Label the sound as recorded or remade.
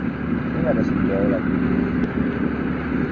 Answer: recorded